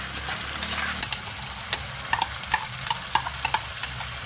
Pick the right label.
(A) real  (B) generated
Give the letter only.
A